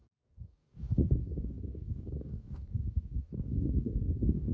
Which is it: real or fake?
fake